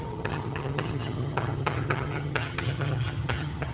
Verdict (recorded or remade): remade